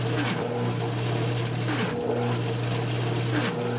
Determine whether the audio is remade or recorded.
recorded